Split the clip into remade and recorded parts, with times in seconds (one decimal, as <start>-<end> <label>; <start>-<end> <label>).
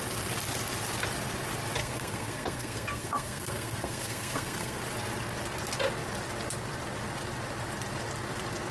0.0-1.8 recorded; 1.8-4.8 remade; 4.8-8.7 recorded